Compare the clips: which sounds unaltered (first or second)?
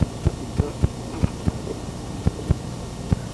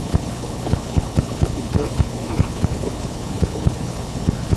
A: first